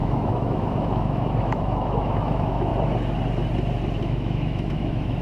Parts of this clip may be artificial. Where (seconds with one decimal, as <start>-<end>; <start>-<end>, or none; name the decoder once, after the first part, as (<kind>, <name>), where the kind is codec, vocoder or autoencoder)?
0.0-2.7 (autoencoder, DAC-VAE); 4.0-5.2